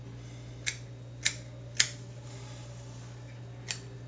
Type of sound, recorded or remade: recorded